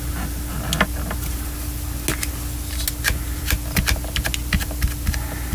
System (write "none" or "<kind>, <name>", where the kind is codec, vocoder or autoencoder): none